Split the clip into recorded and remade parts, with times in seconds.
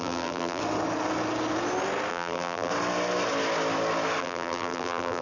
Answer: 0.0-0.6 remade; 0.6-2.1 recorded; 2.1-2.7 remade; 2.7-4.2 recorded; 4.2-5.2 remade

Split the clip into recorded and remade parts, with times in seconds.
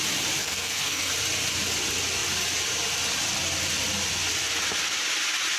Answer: 0.0-0.4 recorded; 0.4-1.1 remade; 1.1-5.6 recorded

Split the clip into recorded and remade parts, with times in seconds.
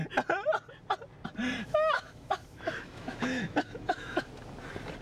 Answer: 0.0-1.6 recorded; 1.6-4.3 remade; 4.3-5.0 recorded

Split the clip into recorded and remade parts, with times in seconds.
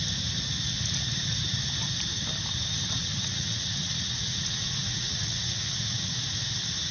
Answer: 0.0-3.0 recorded; 3.0-6.1 remade; 6.1-6.9 recorded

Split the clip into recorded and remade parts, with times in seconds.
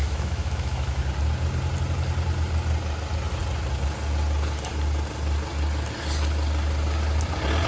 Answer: 0.0-1.0 remade; 1.0-7.7 recorded